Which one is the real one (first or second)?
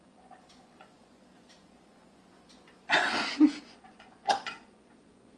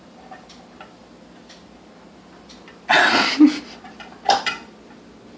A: second